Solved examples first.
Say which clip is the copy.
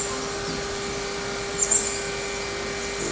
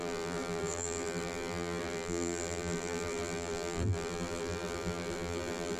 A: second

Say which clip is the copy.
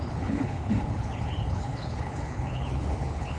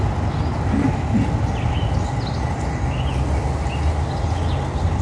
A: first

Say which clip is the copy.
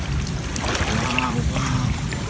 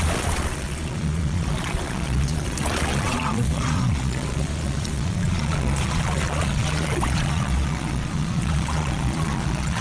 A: second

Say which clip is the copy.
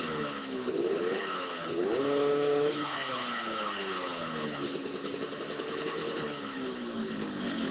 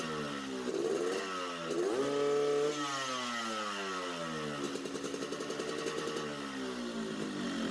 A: first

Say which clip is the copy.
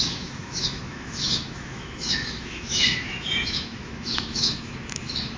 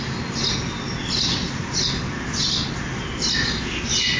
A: first